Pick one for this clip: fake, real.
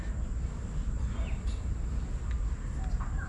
real